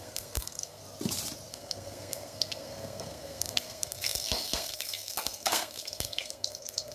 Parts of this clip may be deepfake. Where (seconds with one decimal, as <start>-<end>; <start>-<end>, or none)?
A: 0.0-0.8; 1.5-6.9